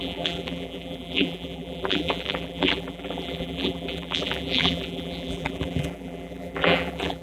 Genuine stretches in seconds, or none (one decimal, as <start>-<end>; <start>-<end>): none